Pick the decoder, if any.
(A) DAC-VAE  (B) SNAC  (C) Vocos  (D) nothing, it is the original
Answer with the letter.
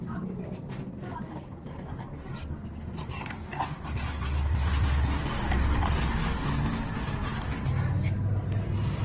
D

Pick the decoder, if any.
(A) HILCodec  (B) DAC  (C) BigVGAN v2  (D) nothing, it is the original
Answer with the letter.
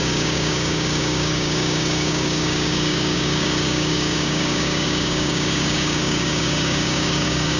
B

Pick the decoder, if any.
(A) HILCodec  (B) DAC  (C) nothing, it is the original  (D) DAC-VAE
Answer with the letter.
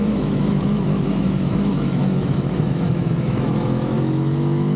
D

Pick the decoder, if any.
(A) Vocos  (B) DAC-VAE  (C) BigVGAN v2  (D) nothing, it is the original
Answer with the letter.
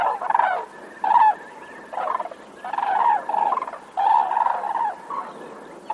D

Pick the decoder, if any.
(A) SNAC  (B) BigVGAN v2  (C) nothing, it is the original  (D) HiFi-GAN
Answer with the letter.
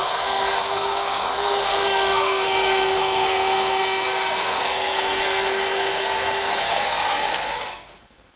A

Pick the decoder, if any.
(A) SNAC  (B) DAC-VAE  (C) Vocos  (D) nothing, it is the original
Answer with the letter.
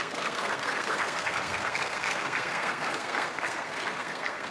A